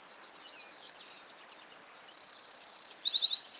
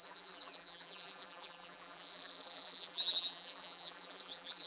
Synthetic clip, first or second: second